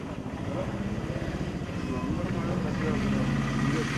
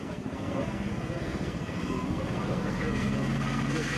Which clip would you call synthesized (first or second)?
second